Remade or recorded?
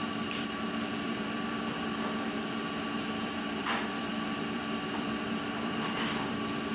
remade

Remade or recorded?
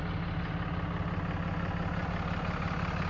recorded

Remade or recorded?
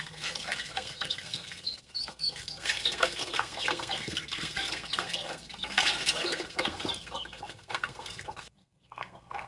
remade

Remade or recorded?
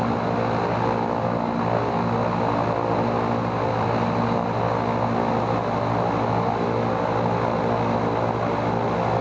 recorded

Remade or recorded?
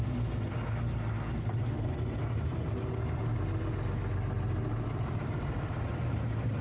recorded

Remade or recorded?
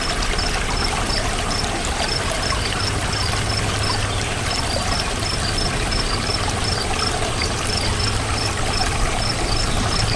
recorded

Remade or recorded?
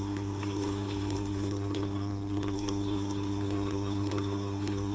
remade